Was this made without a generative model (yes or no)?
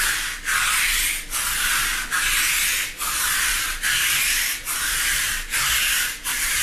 yes